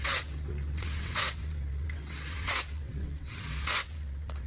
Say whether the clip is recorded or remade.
remade